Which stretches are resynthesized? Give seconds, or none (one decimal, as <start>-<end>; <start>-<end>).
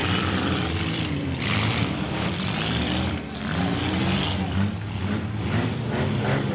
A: 0.0-3.2